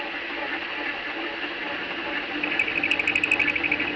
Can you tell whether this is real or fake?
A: real